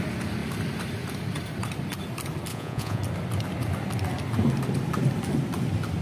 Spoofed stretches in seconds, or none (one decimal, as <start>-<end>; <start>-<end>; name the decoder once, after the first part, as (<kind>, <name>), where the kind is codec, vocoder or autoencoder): 2.5-3.0 (vocoder, Vocos)